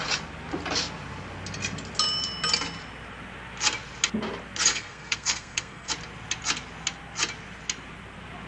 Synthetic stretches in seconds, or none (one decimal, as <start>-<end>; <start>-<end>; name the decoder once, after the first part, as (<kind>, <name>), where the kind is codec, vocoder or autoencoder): 4.7-5.9 (codec, SNAC)